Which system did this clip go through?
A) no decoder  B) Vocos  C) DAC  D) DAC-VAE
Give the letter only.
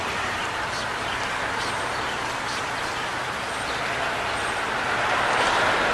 A